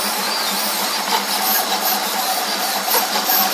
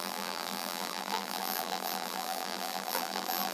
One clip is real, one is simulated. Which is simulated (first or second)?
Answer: second